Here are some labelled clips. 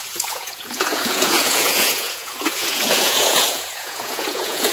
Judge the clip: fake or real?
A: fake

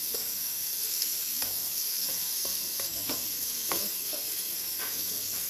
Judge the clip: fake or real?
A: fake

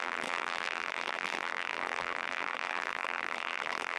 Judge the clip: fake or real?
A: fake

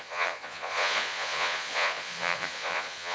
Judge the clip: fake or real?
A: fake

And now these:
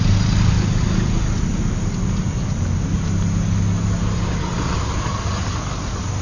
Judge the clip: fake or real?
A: real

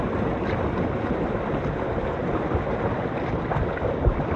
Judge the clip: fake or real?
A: fake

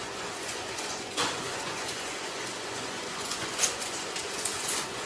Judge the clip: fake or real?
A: fake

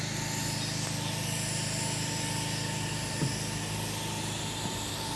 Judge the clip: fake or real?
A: real